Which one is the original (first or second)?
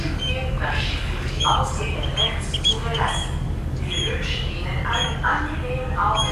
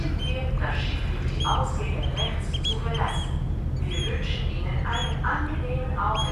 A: second